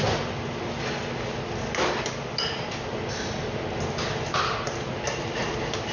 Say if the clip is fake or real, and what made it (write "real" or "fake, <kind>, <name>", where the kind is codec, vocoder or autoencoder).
real